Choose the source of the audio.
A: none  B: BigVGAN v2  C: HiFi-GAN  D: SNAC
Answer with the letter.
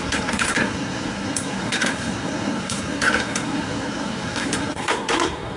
D